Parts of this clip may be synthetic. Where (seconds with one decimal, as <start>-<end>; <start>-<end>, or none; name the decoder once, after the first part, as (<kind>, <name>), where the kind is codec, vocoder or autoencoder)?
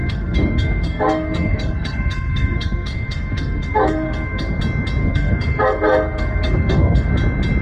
0.0-4.6 (codec, SNAC); 5.0-7.1